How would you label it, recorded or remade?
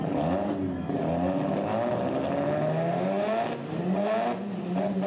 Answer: recorded